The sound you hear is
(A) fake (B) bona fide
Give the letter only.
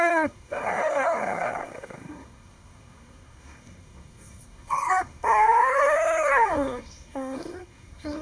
A